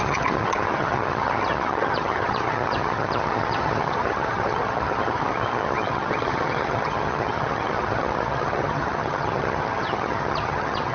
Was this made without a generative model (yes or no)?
no